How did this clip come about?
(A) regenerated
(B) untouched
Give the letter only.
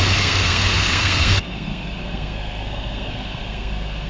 A